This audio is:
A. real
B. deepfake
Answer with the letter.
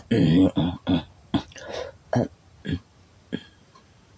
A